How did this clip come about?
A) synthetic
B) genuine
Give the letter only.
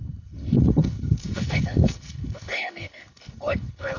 A